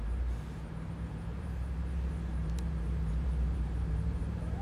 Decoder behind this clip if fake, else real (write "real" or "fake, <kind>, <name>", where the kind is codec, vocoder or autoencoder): fake, vocoder, BigVGAN v2